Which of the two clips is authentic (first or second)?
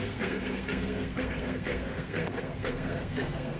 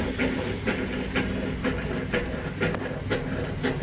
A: second